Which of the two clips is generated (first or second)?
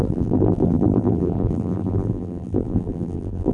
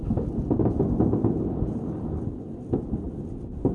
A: first